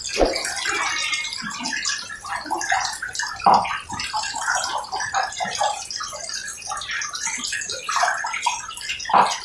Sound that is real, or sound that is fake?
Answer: real